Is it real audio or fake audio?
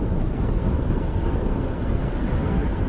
fake